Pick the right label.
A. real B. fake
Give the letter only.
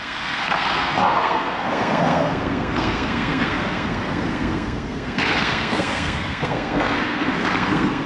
B